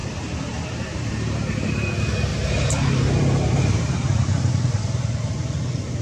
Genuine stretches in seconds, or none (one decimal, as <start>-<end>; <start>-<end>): 1.7-2.3; 5.3-6.0